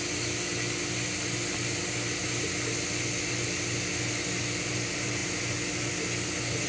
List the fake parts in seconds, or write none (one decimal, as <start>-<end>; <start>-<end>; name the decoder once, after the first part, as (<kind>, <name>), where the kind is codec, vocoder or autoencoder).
none